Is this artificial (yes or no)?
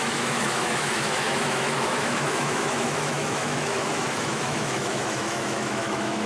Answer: yes